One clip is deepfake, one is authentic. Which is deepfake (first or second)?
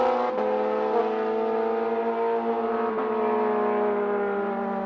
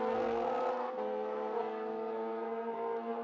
second